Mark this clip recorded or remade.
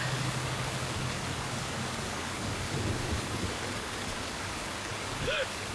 remade